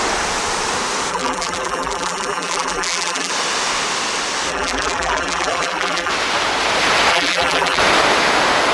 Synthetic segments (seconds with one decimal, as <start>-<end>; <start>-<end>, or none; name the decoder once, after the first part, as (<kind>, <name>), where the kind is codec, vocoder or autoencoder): 1.1-3.3 (vocoder, BigVGAN v2); 4.5-6.1; 7.1-7.8